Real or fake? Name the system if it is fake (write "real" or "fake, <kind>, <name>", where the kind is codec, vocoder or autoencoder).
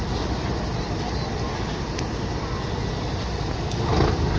real